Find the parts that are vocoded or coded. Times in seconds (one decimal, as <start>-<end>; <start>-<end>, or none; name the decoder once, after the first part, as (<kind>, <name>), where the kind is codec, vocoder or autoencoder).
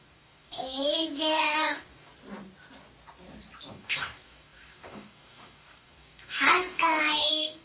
0.0-2.1 (codec, DAC); 3.7-7.6